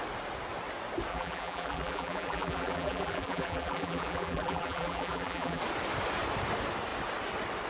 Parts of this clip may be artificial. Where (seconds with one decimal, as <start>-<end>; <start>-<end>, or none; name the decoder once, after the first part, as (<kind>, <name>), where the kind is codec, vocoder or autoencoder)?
1.1-5.6 (vocoder, BigVGAN v2)